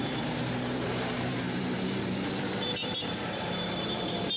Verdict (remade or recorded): remade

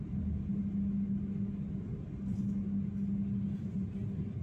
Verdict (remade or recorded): recorded